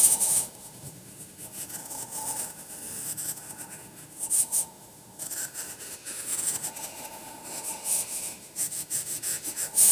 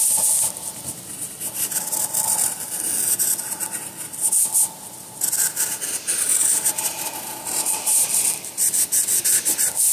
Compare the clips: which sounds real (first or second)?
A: second